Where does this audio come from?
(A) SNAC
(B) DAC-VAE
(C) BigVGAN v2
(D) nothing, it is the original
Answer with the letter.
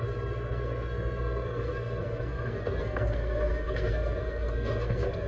A